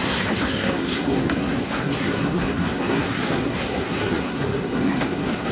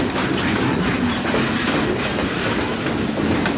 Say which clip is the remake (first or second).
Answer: first